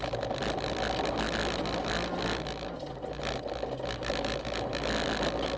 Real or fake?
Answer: real